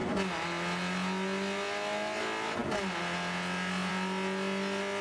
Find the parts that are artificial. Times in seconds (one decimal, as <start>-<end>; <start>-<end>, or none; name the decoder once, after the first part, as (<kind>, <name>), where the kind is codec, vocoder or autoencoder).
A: none

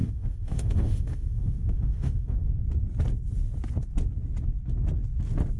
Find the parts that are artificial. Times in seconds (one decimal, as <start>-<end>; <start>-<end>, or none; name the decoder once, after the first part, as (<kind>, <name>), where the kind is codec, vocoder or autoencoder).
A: 0.0-2.5 (autoencoder, DAC-VAE)

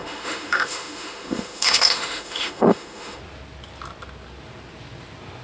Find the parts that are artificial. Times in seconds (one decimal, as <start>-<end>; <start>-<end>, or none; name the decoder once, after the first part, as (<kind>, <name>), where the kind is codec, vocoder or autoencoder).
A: 0.0-3.2 (autoencoder, DAC-VAE)

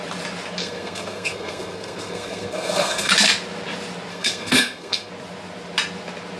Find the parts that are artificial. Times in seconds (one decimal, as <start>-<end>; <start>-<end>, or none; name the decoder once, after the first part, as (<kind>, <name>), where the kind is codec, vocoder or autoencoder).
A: 0.6-3.1 (codec, SNAC); 4.1-5.1

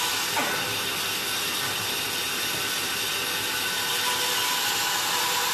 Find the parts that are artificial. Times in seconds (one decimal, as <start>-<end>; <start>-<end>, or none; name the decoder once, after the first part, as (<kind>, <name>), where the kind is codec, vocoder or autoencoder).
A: none

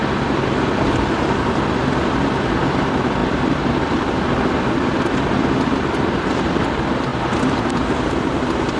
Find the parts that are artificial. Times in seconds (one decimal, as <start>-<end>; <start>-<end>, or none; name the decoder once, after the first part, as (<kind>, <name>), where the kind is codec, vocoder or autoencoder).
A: 2.6-7.1 (vocoder, BigVGAN v2); 7.7-8.8

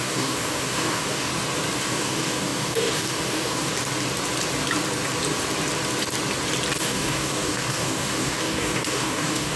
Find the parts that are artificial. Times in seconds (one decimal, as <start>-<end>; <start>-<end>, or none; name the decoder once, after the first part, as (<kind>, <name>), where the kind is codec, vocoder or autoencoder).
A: 0.0-1.3 (codec, DAC); 1.8-3.7; 6.8-9.6

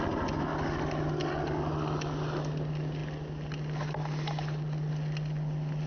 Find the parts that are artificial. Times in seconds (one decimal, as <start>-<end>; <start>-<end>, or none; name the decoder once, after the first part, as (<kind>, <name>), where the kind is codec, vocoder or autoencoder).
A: none